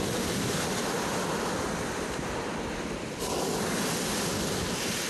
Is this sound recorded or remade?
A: recorded